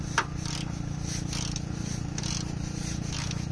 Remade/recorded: recorded